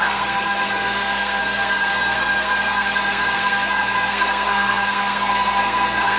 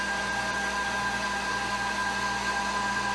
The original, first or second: second